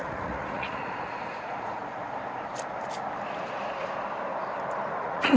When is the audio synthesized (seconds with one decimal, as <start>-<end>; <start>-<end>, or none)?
0.0-1.8; 5.0-5.4